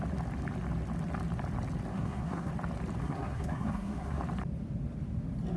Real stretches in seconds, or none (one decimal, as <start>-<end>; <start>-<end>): 0.0-1.9; 2.5-3.0; 4.2-5.6